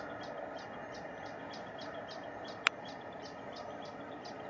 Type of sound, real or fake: real